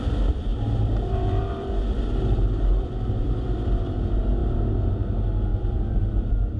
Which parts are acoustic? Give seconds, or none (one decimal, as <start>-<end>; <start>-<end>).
0.0-0.5; 3.5-5.5; 6.1-6.6